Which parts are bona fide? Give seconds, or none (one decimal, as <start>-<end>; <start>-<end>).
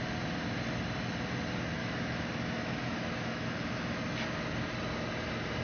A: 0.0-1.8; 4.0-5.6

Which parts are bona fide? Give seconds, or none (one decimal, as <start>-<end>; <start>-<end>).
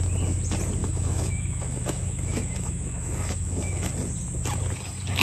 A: 0.0-0.8; 3.9-5.2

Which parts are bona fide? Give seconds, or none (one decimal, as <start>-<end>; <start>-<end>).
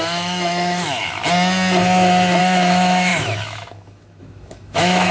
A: 1.2-2.4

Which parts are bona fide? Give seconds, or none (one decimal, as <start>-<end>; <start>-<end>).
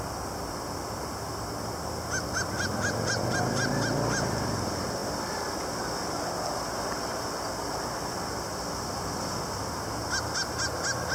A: 0.0-11.1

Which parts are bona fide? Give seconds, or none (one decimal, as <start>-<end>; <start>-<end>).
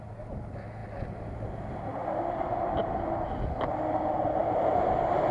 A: 0.0-5.3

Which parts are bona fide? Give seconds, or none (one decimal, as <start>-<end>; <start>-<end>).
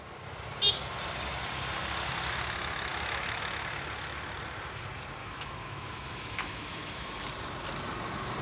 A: 0.0-5.2; 7.2-8.4